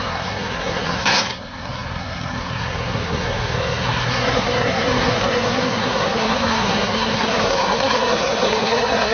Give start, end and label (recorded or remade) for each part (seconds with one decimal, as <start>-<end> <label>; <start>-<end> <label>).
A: 0.0-9.1 remade